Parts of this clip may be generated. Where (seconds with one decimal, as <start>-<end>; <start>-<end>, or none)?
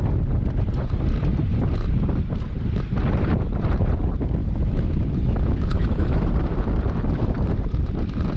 4.4-6.3